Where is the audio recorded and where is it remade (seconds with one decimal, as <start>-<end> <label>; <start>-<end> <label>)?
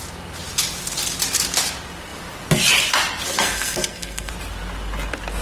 0.0-3.3 recorded; 3.3-4.3 remade; 4.3-5.4 recorded